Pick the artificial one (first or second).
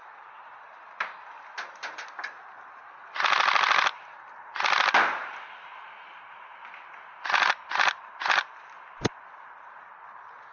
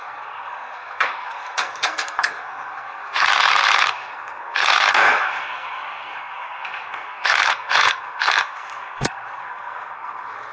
second